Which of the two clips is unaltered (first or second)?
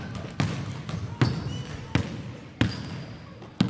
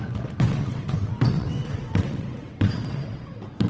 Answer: first